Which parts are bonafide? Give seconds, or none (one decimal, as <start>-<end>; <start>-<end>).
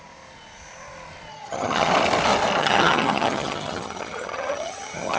0.0-1.3; 1.9-2.6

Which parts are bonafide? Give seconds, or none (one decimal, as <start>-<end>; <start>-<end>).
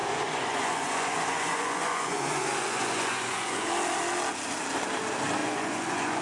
3.7-5.4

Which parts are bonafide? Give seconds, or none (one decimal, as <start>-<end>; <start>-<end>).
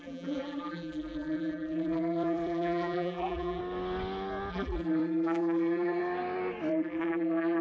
3.6-4.5; 6.0-6.7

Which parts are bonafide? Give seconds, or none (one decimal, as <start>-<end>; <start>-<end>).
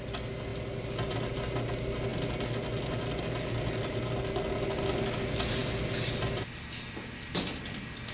0.0-8.1